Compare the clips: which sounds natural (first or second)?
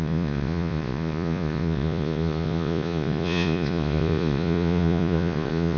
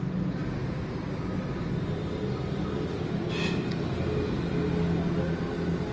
second